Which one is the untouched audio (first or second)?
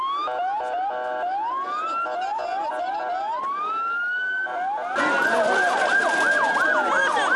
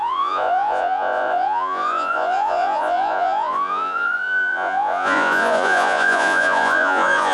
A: first